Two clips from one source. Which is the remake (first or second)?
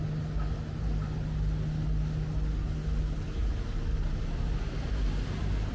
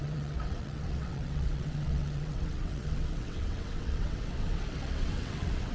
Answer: second